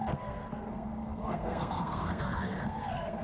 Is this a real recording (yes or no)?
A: no